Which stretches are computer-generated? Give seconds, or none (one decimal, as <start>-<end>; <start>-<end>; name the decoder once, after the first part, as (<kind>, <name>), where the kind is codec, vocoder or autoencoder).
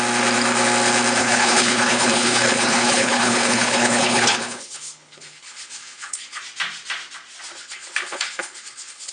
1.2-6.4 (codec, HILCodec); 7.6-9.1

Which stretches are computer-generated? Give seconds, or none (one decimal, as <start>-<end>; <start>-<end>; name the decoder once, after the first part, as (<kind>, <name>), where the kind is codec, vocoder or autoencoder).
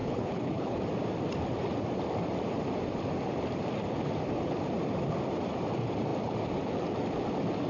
0.0-0.8 (codec, HILCodec)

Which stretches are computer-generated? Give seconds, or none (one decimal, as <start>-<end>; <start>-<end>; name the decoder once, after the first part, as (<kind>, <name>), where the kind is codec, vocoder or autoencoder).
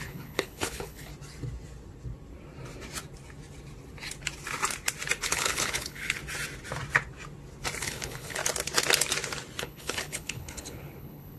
0.0-1.1 (codec, HILCodec); 5.2-6.2; 7.8-8.4; 9.6-11.4